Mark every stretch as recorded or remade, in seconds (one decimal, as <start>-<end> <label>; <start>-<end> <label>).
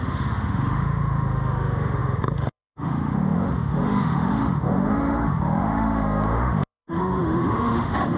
0.0-8.2 remade